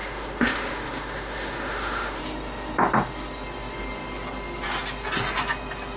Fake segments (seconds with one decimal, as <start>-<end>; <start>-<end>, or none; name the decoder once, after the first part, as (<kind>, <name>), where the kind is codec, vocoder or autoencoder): 0.0-2.2 (autoencoder, DAC-VAE)